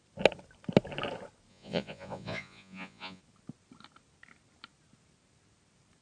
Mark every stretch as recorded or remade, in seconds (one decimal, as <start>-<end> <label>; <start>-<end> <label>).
0.0-1.5 recorded; 1.5-3.2 remade; 3.2-6.0 recorded

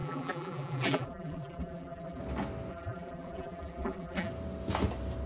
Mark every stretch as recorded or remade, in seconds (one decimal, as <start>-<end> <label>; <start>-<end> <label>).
0.0-2.2 remade; 2.2-2.7 recorded; 2.7-4.3 remade; 4.3-5.3 recorded

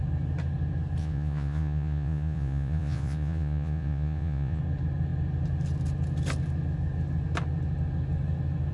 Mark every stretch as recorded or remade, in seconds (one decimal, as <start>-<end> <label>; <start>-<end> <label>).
0.0-1.0 recorded; 1.0-4.6 remade; 4.6-8.7 recorded

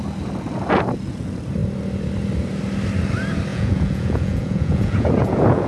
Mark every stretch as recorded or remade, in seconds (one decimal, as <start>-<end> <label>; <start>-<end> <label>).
0.0-3.5 recorded; 3.5-5.7 remade

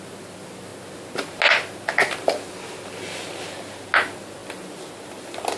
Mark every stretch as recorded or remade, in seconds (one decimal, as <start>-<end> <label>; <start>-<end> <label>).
0.0-5.6 recorded

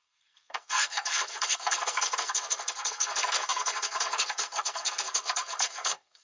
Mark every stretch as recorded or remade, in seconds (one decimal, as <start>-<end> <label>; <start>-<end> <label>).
0.0-6.2 remade